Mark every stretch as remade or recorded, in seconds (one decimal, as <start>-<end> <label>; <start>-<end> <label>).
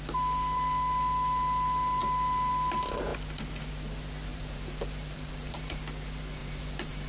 0.0-4.3 recorded; 4.3-5.6 remade; 5.6-6.4 recorded; 6.4-7.1 remade